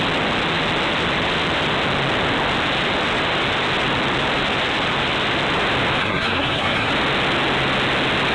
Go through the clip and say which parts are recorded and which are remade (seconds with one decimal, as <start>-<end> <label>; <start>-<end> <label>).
0.0-6.0 recorded; 6.0-6.9 remade; 6.9-8.3 recorded